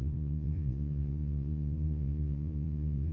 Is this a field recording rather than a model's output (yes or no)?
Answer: no